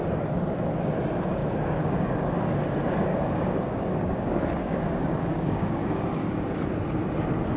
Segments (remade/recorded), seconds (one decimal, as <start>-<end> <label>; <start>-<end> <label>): 0.0-1.4 recorded; 1.4-2.1 remade; 2.1-3.1 recorded; 3.1-6.6 remade; 6.6-7.6 recorded